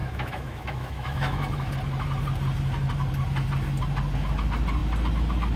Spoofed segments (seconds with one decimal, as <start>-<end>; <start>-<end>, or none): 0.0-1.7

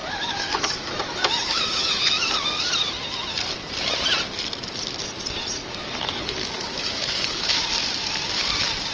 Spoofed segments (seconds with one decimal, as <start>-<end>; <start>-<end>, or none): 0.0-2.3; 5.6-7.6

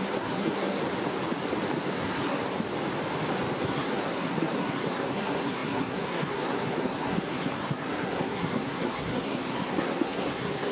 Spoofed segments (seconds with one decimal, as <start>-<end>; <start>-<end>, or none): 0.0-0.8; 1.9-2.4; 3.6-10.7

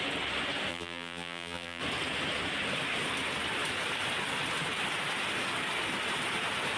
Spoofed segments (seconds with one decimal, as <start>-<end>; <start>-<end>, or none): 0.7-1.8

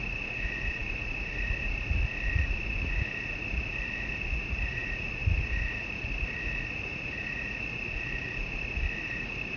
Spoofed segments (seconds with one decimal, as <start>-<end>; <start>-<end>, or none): 0.0-9.6

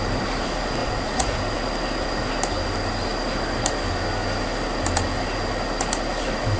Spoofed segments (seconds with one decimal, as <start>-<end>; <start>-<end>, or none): 0.8-1.4